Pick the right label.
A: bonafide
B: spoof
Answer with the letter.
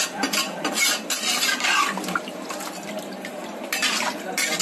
A